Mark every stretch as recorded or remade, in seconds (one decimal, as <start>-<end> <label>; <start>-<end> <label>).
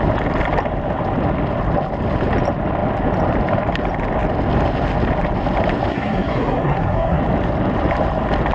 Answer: 0.0-5.9 recorded; 5.9-7.2 remade; 7.2-8.5 recorded